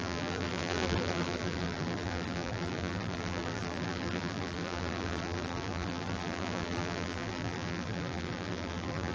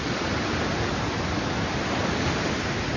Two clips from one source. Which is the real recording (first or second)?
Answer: second